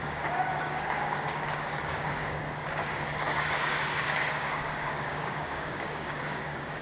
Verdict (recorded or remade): remade